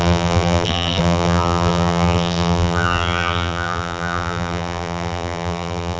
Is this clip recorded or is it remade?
remade